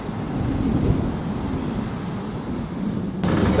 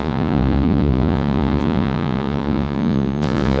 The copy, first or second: second